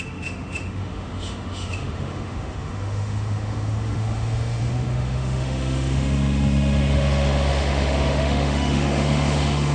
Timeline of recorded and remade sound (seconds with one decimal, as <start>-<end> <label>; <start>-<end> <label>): 0.0-9.7 remade